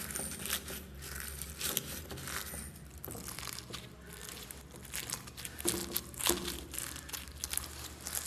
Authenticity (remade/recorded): recorded